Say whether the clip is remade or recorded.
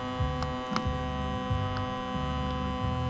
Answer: recorded